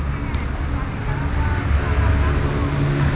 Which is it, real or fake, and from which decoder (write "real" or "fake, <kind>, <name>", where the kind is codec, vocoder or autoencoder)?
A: real